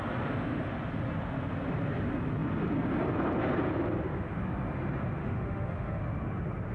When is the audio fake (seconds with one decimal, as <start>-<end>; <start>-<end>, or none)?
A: 5.2-6.0